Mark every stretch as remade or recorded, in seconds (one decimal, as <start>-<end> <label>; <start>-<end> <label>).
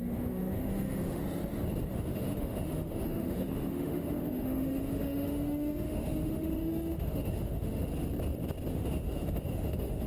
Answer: 0.0-1.2 remade; 1.2-1.9 recorded; 1.9-7.9 remade; 7.9-8.7 recorded; 8.7-10.1 remade